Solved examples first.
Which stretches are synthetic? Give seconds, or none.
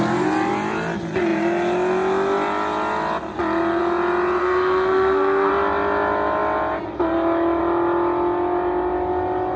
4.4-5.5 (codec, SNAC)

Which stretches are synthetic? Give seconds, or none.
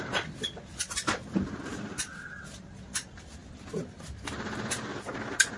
none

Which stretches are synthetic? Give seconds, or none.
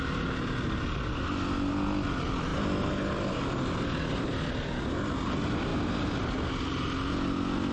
none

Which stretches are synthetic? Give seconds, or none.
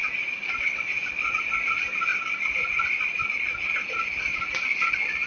0.0-1.4 (vocoder, BigVGAN v2); 2.1-3.9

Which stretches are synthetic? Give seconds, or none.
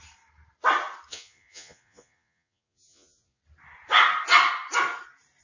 1.1-3.4 (vocoder, Vocos)